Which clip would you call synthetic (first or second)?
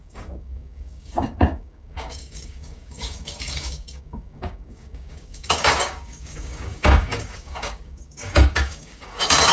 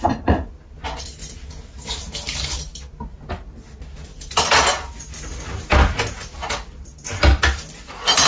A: first